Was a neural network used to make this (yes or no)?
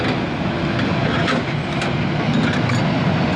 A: no